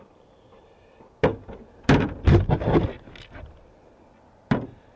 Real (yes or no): yes